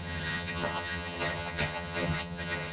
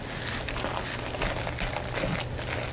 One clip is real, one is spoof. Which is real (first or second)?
second